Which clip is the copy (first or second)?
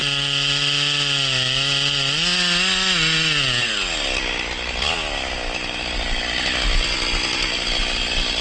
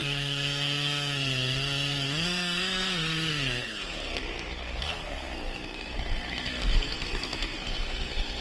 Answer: second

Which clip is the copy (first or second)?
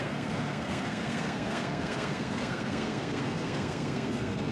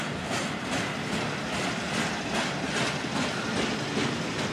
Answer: first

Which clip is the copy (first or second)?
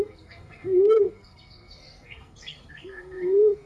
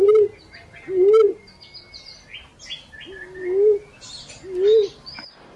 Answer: first